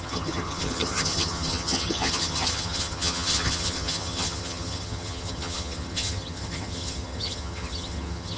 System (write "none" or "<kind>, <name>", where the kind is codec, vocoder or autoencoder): vocoder, HiFi-GAN